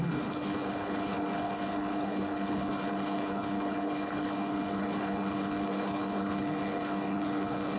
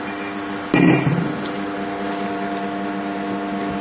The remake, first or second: first